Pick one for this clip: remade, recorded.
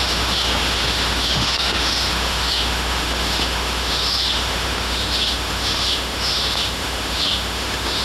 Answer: remade